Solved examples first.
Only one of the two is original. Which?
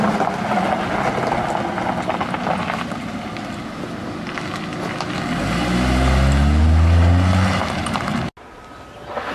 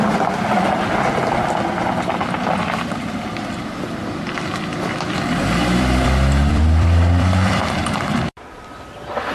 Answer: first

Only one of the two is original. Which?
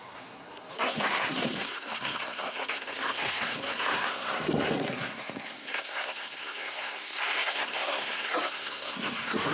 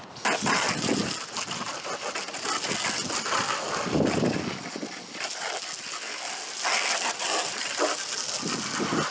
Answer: second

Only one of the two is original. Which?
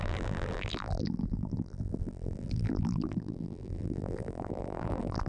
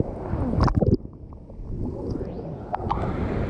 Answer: second